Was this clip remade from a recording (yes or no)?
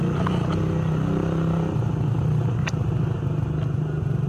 no